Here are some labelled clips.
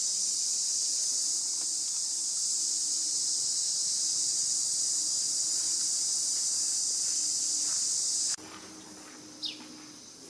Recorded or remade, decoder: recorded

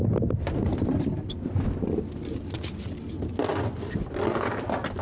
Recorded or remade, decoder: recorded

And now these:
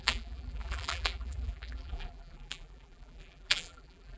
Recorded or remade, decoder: remade, vocoder, BigVGAN v2